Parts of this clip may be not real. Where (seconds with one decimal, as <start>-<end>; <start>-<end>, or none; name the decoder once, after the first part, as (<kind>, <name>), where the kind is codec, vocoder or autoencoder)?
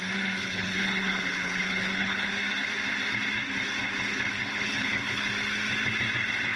0.4-2.3 (codec, HILCodec); 4.1-5.3